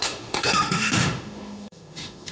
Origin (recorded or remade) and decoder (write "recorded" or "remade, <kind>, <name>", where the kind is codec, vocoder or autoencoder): remade, autoencoder, DAC-VAE